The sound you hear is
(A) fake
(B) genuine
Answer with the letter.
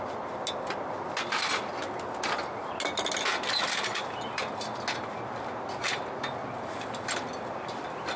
B